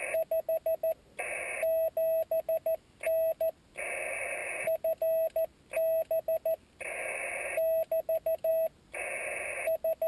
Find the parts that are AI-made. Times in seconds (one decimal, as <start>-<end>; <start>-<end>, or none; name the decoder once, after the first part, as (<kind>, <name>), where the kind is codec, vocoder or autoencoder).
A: none